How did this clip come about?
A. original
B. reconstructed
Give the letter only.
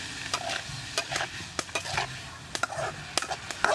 A